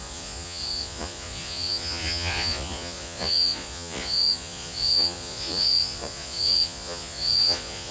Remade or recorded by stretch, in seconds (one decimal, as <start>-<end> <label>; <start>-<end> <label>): 0.0-7.9 remade

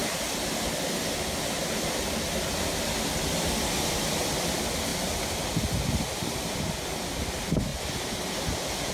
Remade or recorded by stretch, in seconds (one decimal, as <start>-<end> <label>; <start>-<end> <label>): 0.0-8.9 recorded

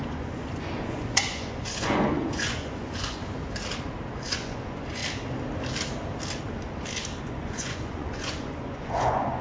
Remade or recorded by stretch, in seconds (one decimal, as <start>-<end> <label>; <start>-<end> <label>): 0.0-3.2 remade; 3.2-4.1 recorded; 4.1-5.0 remade; 5.0-7.2 recorded; 7.2-9.4 remade

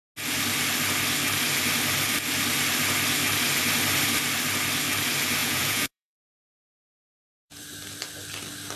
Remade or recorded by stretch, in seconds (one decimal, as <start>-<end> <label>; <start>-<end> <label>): 0.0-5.4 recorded; 5.4-7.6 remade; 7.6-8.8 recorded

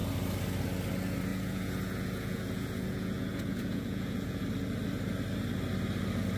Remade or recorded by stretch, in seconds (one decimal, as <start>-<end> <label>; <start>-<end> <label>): 0.0-1.3 recorded; 1.3-4.4 remade; 4.4-6.4 recorded

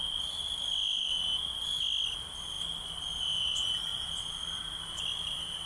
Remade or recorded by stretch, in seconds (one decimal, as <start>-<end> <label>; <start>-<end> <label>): 0.0-5.7 recorded